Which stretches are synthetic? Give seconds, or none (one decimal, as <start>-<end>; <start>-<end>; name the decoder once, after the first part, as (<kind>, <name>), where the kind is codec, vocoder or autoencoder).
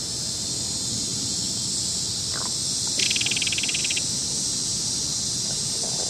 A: none